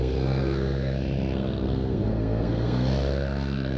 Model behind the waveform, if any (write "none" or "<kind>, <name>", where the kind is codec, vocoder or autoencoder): codec, SNAC